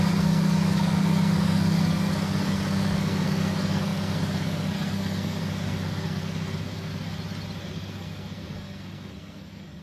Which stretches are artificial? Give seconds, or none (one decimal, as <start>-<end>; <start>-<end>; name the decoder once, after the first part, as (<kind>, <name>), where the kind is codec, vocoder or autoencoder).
0.0-6.9 (codec, SNAC); 7.6-9.8